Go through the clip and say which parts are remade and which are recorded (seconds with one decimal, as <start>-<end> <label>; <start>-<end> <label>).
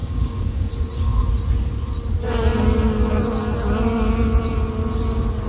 0.0-0.7 remade; 0.7-5.5 recorded